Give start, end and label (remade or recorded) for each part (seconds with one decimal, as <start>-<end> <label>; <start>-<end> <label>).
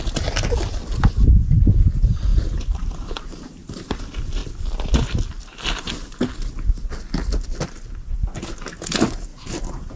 0.0-2.3 recorded; 2.3-4.0 remade; 4.0-10.0 recorded